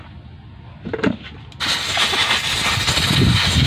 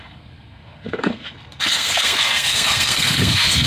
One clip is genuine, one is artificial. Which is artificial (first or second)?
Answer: second